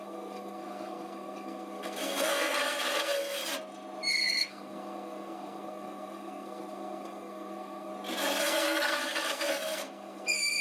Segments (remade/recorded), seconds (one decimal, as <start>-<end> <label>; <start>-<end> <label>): 0.0-3.4 remade; 3.4-4.1 recorded; 4.1-7.9 remade; 7.9-8.4 recorded; 8.4-10.6 remade